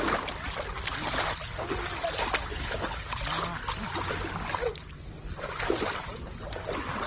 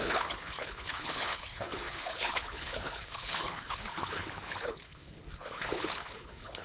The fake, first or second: second